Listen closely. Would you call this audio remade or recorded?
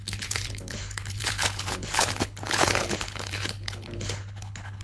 remade